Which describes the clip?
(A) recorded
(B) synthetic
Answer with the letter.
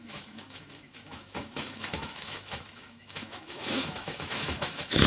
B